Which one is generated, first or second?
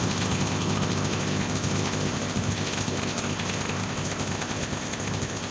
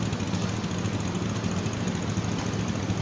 first